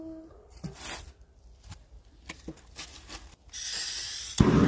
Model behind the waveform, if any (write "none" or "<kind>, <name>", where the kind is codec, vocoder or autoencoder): none